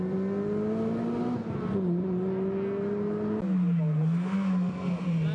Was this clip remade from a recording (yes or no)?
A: no